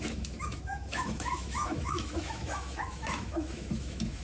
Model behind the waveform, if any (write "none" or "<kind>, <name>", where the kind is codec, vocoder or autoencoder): autoencoder, DAC-VAE